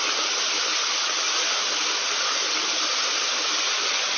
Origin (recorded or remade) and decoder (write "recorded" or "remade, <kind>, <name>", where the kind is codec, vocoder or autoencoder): recorded